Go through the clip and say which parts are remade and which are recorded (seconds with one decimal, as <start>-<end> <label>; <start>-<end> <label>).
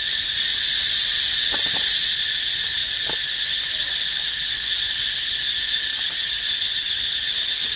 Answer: 0.0-7.8 recorded